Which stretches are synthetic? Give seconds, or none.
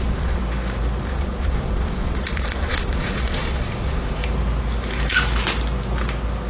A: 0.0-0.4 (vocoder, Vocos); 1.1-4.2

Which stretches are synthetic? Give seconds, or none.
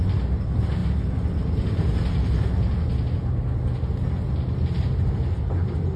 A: none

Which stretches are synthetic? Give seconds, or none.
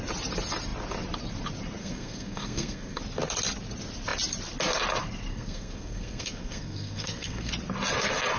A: 1.8-3.0 (codec, SNAC); 5.3-7.5